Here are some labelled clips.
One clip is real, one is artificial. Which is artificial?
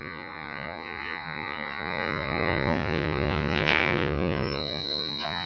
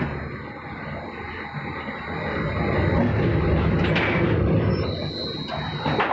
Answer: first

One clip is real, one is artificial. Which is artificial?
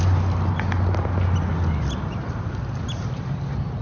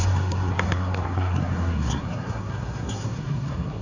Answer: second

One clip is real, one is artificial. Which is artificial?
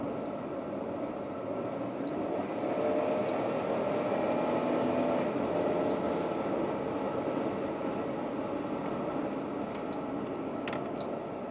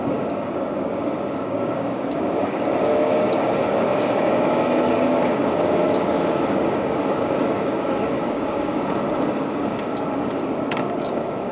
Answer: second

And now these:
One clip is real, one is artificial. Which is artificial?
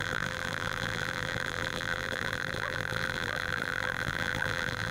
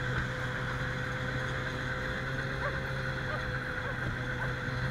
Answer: first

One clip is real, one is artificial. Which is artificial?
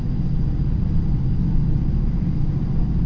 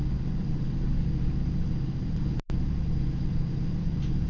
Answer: first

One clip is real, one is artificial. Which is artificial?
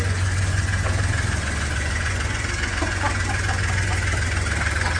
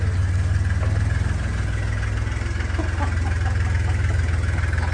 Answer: first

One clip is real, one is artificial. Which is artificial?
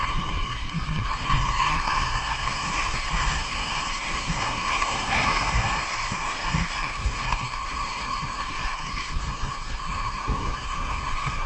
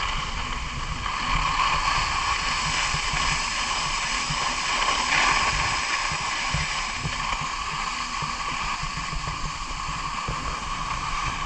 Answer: first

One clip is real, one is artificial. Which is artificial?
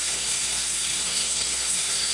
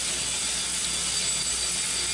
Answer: first